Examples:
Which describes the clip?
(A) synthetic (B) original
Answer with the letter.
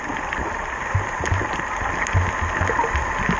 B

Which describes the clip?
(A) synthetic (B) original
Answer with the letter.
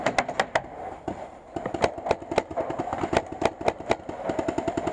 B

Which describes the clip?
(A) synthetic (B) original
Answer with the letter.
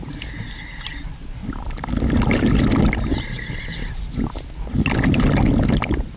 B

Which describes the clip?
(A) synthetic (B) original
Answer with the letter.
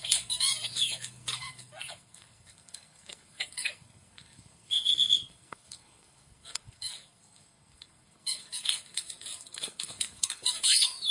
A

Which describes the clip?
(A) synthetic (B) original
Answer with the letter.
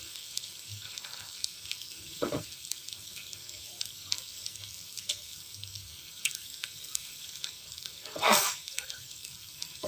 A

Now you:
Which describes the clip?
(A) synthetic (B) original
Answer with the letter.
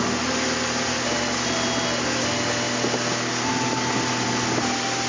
B